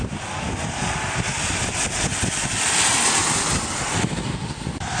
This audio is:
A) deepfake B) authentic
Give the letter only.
B